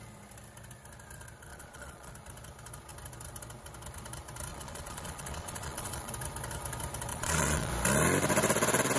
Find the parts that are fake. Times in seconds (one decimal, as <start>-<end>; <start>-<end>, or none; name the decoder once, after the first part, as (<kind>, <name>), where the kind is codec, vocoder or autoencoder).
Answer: 1.5-2.1 (vocoder, Vocos); 4.5-6.1; 7.1-7.7